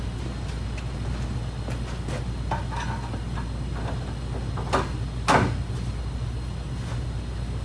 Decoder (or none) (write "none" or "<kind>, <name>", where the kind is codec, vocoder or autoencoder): none